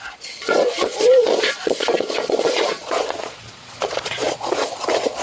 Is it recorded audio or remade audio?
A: remade